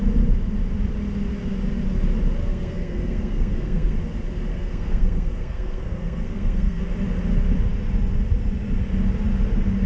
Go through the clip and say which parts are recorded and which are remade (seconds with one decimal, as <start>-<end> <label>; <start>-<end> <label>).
0.0-2.4 recorded; 2.4-4.0 remade; 4.0-4.5 recorded; 4.5-6.8 remade; 6.8-9.9 recorded

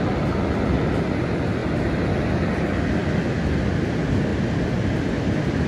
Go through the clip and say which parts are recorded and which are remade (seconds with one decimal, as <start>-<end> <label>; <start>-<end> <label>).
0.0-5.7 recorded

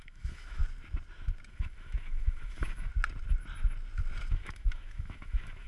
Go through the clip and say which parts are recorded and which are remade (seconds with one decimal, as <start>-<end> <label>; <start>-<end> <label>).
0.0-0.6 remade; 0.6-1.5 recorded; 1.5-2.9 remade; 2.9-4.3 recorded; 4.3-5.7 remade

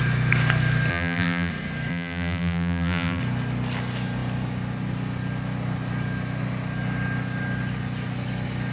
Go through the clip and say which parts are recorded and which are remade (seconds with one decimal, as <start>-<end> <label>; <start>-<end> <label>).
0.0-0.9 recorded; 0.9-1.5 remade; 1.5-1.9 recorded; 1.9-3.2 remade; 3.2-8.7 recorded

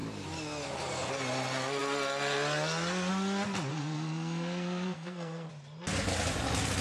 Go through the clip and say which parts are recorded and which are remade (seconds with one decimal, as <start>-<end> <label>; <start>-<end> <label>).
0.0-3.7 recorded; 3.7-5.5 remade; 5.5-6.8 recorded

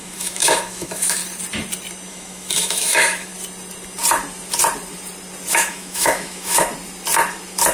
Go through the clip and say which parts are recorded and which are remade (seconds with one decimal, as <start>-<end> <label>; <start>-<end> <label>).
0.0-1.2 remade; 1.2-2.1 recorded; 2.1-3.3 remade; 3.3-5.5 recorded; 5.5-6.7 remade; 6.7-7.7 recorded